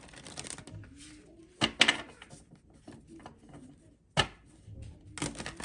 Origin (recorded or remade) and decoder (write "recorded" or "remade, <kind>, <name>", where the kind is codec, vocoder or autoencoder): recorded